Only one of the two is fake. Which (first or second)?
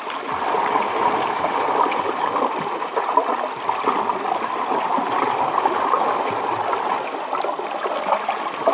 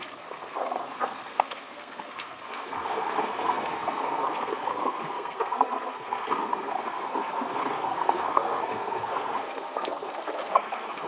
second